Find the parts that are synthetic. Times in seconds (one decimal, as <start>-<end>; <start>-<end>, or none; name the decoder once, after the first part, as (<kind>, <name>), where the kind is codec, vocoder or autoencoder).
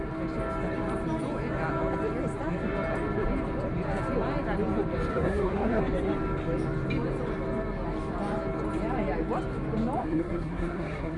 5.1-5.8 (codec, SNAC); 10.0-11.2